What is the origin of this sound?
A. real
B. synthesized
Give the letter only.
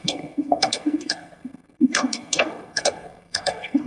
B